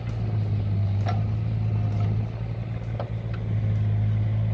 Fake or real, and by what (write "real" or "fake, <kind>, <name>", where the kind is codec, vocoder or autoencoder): real